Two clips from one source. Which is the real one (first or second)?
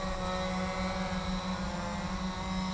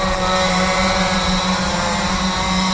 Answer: first